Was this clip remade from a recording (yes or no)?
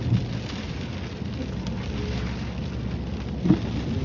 no